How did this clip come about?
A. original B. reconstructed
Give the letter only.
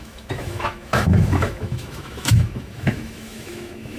B